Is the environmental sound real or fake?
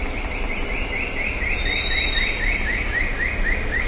real